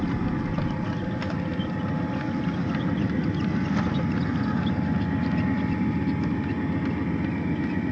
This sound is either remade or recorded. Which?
recorded